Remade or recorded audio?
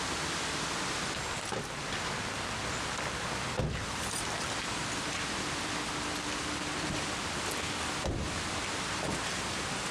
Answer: recorded